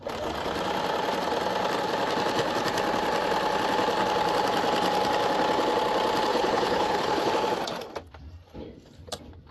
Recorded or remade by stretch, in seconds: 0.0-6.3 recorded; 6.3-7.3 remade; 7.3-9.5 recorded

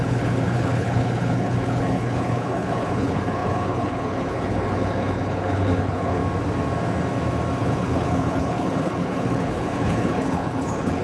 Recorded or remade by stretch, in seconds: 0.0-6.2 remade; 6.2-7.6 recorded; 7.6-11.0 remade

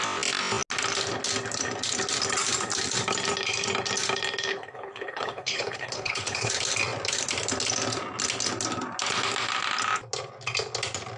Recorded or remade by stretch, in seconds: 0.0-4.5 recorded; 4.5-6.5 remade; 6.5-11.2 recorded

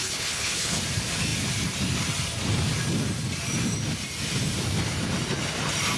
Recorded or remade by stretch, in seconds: 0.0-0.8 remade; 0.8-6.0 recorded

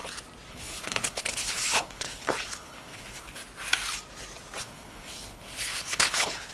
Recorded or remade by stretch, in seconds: 0.0-0.5 recorded; 0.5-3.4 remade; 3.4-4.6 recorded; 4.6-6.5 remade

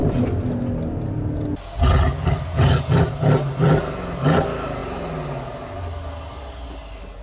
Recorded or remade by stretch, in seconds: 0.0-7.2 recorded

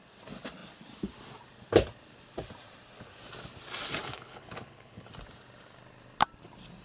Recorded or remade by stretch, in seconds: 0.0-4.0 recorded; 4.0-5.1 remade; 5.1-6.8 recorded

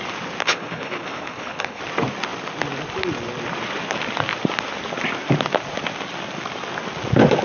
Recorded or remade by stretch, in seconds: 0.0-0.4 recorded; 0.4-1.8 remade; 1.8-7.4 recorded